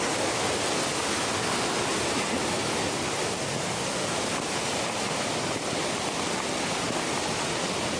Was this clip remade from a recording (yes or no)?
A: no